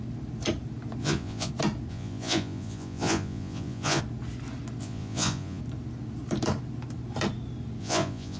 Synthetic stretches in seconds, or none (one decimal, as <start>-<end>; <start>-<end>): 1.0-1.5; 1.9-4.0; 4.8-5.6; 7.8-8.4